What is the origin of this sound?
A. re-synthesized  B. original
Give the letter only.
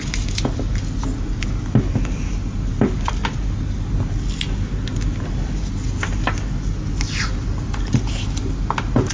B